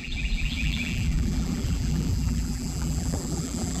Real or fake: fake